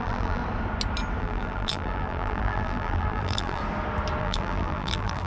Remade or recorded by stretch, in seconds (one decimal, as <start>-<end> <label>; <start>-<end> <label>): 0.0-0.4 remade; 0.4-1.2 recorded; 1.2-3.6 remade; 3.6-4.2 recorded; 4.2-5.3 remade